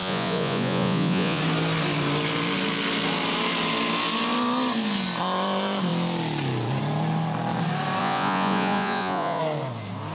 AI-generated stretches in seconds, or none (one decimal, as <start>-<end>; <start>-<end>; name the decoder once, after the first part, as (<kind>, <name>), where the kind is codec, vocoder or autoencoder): 0.0-1.4 (vocoder, Vocos); 8.0-9.4